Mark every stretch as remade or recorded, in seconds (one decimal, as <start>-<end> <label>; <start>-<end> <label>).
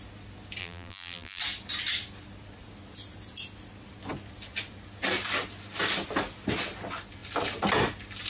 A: 0.0-0.6 recorded; 0.6-1.4 remade; 1.4-8.3 recorded